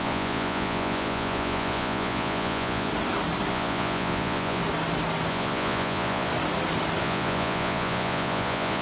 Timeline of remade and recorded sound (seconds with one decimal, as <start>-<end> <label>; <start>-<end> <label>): 0.0-2.9 remade; 2.9-3.5 recorded; 3.5-4.6 remade; 4.6-5.3 recorded; 5.3-6.3 remade; 6.3-7.0 recorded; 7.0-8.8 remade